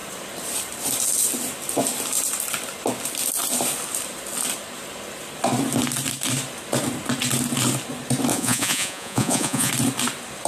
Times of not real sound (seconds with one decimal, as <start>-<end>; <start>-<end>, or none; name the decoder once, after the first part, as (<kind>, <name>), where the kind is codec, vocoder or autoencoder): 8.3-9.7 (vocoder, Vocos)